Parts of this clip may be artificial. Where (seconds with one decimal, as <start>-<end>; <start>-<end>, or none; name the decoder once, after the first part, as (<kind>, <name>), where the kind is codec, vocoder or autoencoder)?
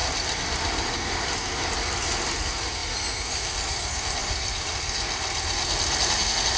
none